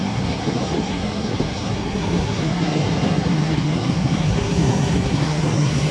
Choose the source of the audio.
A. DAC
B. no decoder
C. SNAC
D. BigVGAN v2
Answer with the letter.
C